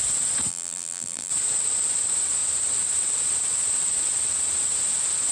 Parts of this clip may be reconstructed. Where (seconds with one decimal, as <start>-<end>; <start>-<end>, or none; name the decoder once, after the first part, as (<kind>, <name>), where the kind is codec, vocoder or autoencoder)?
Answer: 0.5-1.3 (vocoder, BigVGAN v2)